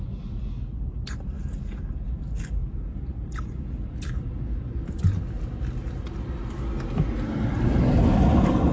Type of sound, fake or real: real